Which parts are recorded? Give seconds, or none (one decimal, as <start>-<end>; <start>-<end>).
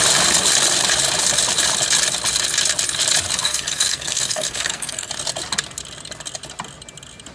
0.0-3.4; 5.1-7.3